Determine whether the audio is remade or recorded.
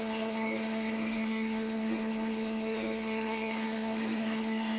remade